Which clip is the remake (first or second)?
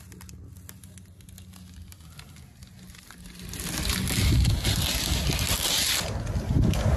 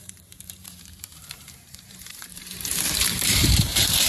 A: second